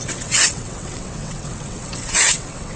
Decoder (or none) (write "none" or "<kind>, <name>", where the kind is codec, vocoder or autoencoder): vocoder, WaveNeXt